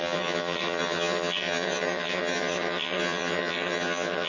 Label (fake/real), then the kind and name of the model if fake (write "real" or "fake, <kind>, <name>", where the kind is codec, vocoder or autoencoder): fake, vocoder, HiFi-GAN